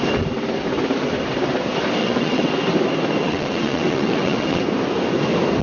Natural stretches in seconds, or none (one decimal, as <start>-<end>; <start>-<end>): 0.0-2.0; 2.5-3.2; 4.6-5.6